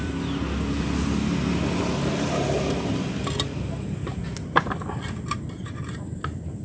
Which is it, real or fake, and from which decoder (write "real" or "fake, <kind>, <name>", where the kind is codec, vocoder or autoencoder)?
real